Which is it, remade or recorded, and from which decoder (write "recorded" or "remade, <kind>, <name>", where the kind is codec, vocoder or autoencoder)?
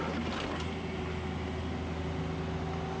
recorded